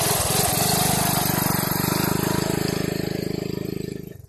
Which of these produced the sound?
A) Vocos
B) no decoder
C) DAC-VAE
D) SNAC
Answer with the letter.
B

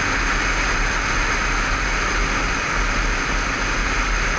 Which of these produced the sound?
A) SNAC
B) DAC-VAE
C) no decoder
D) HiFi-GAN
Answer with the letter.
C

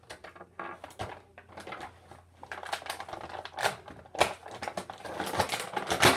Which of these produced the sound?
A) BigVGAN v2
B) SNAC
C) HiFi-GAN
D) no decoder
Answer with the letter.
D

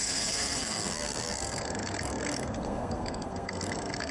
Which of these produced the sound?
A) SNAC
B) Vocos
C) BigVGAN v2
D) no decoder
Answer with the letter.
A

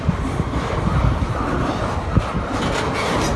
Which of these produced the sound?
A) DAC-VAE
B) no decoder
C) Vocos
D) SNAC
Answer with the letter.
B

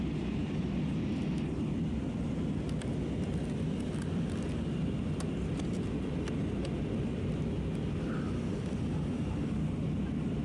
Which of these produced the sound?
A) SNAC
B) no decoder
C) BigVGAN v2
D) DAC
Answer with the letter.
B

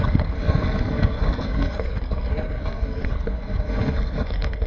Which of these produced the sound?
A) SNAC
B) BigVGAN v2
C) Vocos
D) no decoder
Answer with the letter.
A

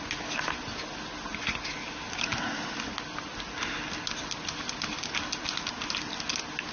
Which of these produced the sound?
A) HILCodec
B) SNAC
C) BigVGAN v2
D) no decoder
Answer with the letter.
D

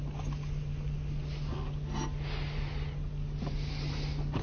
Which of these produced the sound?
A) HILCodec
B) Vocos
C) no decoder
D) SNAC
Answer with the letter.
C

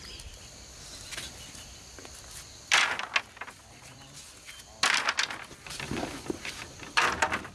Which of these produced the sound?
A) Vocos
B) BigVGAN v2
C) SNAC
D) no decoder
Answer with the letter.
D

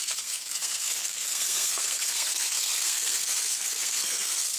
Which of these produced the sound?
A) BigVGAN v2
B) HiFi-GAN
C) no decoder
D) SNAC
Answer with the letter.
D